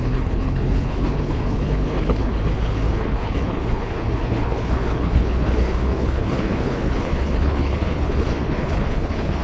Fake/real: fake